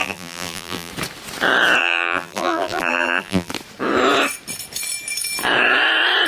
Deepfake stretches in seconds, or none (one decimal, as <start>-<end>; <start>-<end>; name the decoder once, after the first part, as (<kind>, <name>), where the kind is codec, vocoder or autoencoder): 0.0-0.9 (vocoder, BigVGAN v2); 1.8-3.5